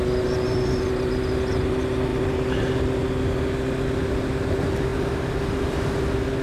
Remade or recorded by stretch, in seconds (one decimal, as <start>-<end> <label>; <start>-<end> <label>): 0.0-6.4 recorded